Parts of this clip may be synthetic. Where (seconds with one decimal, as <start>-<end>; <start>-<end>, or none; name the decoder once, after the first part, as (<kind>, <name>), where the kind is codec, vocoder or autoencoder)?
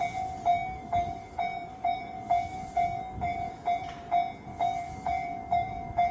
0.5-3.5 (codec, DAC); 4.5-6.1